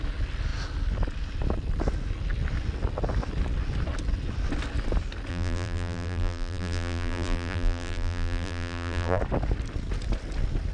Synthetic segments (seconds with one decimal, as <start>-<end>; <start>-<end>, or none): 5.3-9.2